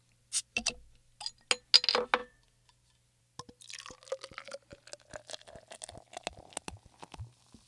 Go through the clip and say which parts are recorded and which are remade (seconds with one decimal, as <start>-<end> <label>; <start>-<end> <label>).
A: 0.0-7.7 recorded